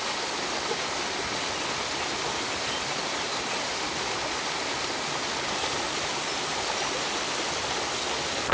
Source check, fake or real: real